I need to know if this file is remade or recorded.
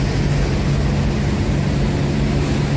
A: recorded